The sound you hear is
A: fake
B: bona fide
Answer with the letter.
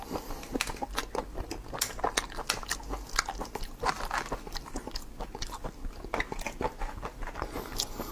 B